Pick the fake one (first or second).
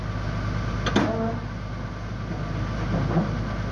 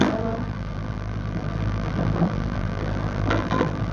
second